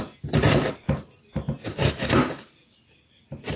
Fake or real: real